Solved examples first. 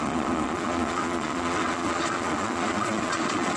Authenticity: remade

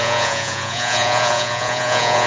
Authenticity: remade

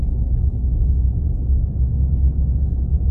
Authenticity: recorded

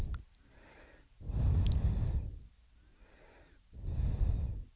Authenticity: recorded